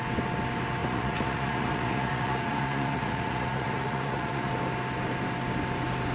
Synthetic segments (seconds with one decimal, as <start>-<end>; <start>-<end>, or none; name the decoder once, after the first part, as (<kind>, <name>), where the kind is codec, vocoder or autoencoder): 0.8-4.5 (vocoder, Vocos)